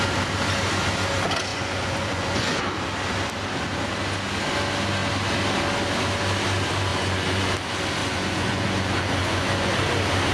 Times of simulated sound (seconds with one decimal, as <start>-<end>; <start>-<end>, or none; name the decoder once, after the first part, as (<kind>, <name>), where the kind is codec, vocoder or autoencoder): 1.5-2.6 (vocoder, Vocos); 6.9-7.5; 8.0-9.7